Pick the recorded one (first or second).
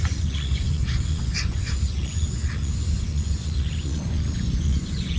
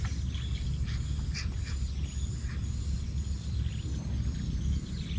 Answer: second